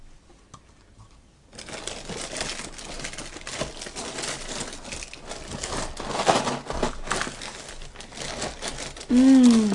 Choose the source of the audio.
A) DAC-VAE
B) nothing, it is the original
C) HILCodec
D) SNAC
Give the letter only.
B